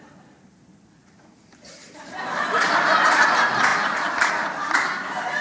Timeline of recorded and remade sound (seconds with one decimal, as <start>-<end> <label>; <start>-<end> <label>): 0.0-1.0 recorded; 1.0-2.8 remade; 2.8-3.7 recorded; 3.7-4.3 remade; 4.3-5.4 recorded